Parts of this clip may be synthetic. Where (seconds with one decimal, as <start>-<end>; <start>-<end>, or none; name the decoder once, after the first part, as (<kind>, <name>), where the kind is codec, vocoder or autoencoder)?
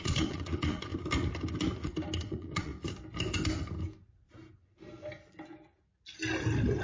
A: 0.0-0.9 (vocoder, Vocos); 2.3-2.7